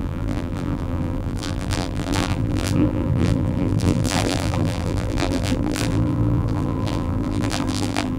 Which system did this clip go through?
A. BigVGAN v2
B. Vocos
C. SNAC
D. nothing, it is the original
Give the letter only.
A